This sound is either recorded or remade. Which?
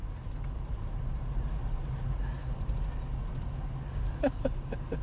recorded